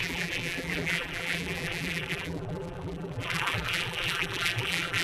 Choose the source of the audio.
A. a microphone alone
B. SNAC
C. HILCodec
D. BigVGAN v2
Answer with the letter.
D